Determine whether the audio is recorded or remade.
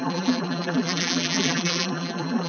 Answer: remade